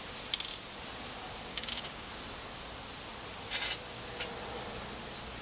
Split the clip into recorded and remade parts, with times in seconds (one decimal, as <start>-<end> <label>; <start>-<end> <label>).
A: 0.0-1.5 recorded; 1.5-2.1 remade; 2.1-5.4 recorded